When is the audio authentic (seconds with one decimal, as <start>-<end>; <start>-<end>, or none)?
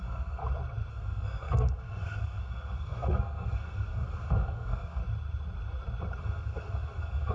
0.4-0.9; 5.0-6.2